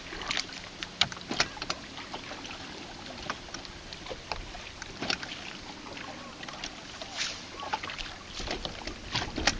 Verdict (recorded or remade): recorded